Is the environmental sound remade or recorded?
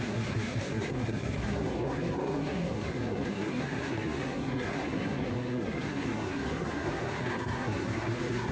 remade